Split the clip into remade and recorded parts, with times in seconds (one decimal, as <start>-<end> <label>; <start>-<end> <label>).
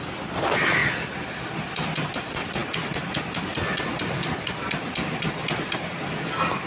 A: 0.0-6.7 recorded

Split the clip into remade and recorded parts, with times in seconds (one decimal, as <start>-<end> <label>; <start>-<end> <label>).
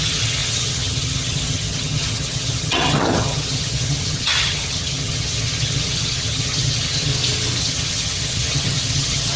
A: 0.0-7.1 remade; 7.1-7.6 recorded; 7.6-9.4 remade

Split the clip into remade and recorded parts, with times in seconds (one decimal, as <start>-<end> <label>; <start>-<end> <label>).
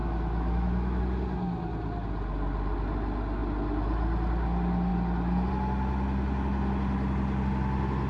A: 0.0-1.0 remade; 1.0-8.1 recorded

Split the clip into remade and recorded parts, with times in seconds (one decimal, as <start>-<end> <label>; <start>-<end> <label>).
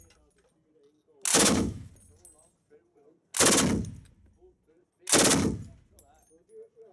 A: 0.0-1.3 recorded; 1.3-1.9 remade; 1.9-6.9 recorded